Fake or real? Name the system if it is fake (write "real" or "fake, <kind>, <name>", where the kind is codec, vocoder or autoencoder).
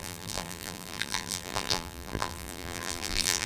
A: fake, vocoder, BigVGAN v2